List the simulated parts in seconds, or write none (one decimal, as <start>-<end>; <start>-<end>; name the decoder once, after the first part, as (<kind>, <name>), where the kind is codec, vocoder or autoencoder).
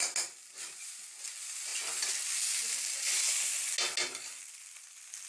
none